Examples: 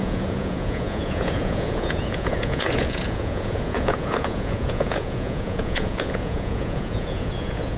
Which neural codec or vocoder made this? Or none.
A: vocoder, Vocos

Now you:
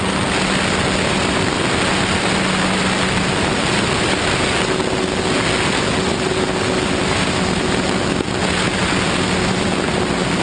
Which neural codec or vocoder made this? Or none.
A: none